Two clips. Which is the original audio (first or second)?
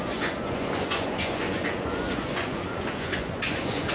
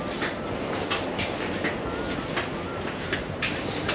second